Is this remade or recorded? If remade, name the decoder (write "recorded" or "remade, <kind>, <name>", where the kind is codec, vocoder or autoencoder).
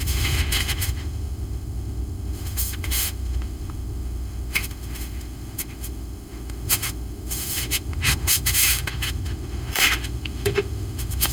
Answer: remade, autoencoder, DAC-VAE